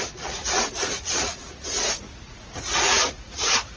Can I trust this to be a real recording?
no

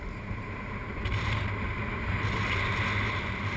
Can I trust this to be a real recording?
yes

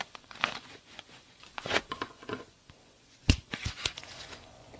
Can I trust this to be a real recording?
no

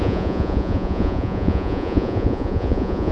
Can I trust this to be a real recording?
no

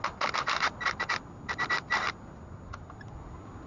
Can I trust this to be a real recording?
yes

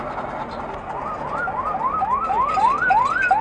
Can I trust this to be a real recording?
yes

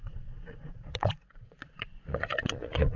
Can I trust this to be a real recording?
no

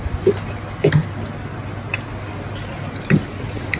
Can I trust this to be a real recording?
yes